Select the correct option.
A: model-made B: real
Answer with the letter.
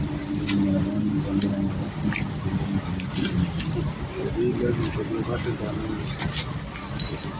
B